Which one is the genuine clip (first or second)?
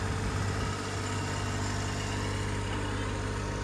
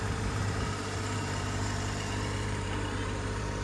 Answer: first